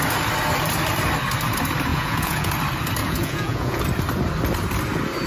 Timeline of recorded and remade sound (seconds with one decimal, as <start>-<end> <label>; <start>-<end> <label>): 0.0-1.9 recorded; 1.9-2.5 remade; 2.5-3.0 recorded; 3.0-3.8 remade; 3.8-5.3 recorded